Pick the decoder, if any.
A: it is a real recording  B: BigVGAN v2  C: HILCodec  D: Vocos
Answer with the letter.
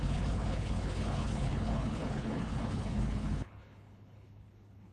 C